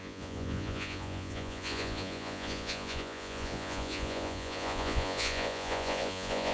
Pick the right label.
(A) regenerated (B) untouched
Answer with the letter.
A